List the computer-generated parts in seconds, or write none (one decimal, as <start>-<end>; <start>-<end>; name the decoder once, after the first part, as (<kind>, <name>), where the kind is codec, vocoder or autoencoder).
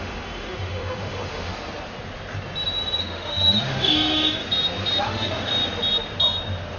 0.0-1.5 (autoencoder, DAC-VAE); 3.0-4.4; 5.0-5.5